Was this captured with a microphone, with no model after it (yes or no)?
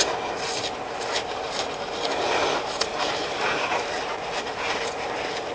yes